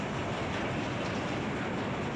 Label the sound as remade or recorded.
recorded